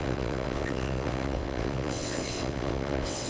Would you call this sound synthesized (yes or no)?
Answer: yes